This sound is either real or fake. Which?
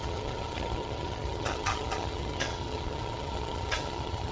fake